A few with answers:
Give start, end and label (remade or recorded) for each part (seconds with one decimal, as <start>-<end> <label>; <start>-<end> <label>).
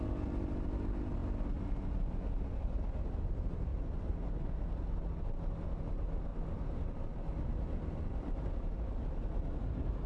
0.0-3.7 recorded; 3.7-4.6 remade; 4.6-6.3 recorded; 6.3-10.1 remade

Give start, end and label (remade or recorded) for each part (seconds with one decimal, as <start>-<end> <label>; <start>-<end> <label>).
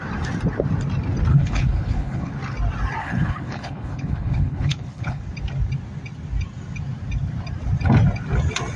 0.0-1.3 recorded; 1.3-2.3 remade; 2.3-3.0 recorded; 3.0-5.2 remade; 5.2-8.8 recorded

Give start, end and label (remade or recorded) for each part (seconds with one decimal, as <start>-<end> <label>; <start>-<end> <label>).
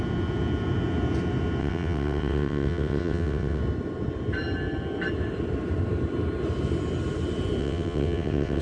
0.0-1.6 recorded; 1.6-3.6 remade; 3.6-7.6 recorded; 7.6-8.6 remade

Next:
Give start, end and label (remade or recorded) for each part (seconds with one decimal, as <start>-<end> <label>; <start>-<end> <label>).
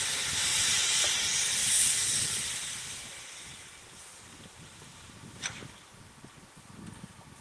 0.0-0.5 recorded; 0.5-1.0 remade; 1.0-1.6 recorded; 1.6-6.0 remade; 6.0-7.4 recorded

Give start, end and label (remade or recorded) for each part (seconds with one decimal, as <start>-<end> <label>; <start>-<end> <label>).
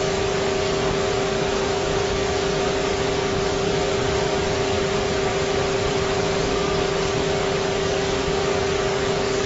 0.0-5.3 remade; 5.3-5.9 recorded; 5.9-9.5 remade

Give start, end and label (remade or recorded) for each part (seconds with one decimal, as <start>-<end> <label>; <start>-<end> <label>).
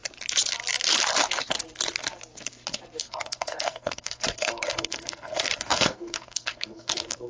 0.0-3.0 recorded; 3.0-7.3 remade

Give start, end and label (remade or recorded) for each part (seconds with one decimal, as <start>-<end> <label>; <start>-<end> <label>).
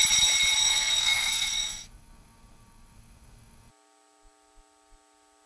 0.0-0.6 recorded; 0.6-3.7 remade; 3.7-5.5 recorded